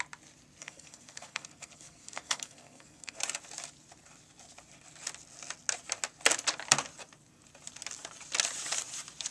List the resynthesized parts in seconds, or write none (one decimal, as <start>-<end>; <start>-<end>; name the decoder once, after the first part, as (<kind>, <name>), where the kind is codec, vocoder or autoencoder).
0.6-3.2 (codec, SNAC)